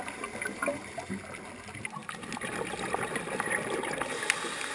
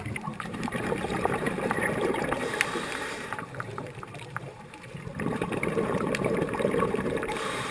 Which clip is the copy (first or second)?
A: second